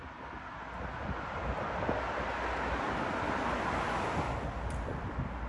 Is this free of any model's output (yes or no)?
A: yes